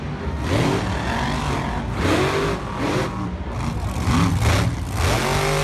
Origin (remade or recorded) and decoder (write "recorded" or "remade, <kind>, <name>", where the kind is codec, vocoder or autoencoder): recorded